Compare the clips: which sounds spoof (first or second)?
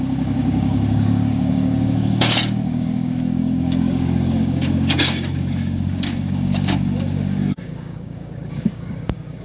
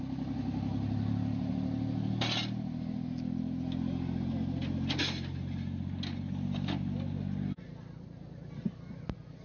first